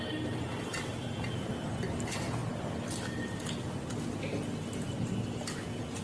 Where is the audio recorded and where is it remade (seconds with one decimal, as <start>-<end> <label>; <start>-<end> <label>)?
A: 0.0-6.0 recorded

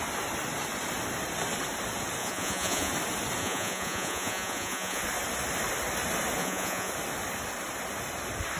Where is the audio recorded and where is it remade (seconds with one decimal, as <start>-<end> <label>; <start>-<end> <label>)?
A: 0.0-2.2 recorded; 2.2-2.9 remade; 2.9-3.4 recorded; 3.4-5.0 remade; 5.0-6.4 recorded; 6.4-6.9 remade; 6.9-8.6 recorded

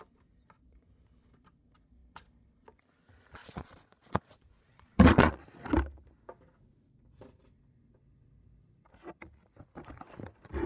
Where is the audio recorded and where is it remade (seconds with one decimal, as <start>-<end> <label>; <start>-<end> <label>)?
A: 0.0-3.4 recorded; 3.4-5.4 remade; 5.4-10.7 recorded

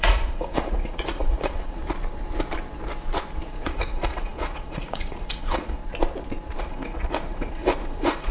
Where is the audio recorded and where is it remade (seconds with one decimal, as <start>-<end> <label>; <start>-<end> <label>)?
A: 0.0-1.8 remade; 1.8-3.4 recorded; 3.4-5.8 remade; 5.8-6.6 recorded; 6.6-8.3 remade

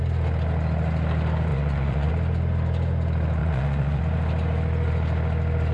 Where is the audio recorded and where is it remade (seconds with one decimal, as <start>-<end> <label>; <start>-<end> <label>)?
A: 0.0-1.5 recorded; 1.5-2.1 remade; 2.1-3.4 recorded; 3.4-4.0 remade; 4.0-5.7 recorded

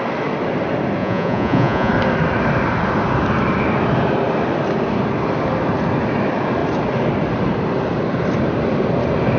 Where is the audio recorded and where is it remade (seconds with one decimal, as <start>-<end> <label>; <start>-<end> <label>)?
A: 0.0-1.0 recorded; 1.0-1.9 remade; 1.9-9.4 recorded

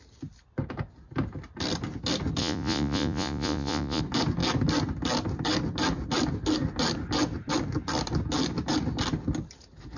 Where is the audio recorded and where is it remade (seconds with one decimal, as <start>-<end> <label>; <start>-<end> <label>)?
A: 0.0-2.4 recorded; 2.4-4.0 remade; 4.0-10.0 recorded